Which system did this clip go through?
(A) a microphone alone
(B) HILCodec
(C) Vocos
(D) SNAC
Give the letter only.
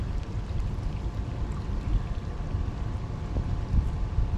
A